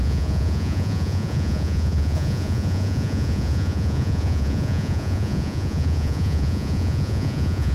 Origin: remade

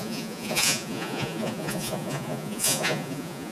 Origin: remade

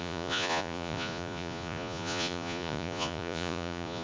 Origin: remade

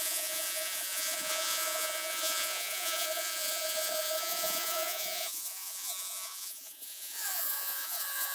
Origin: remade